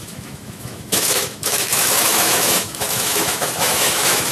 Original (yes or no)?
no